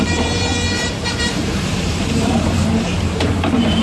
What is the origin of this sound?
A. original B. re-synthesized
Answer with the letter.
B